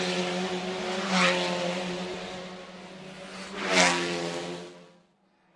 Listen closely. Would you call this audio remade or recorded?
recorded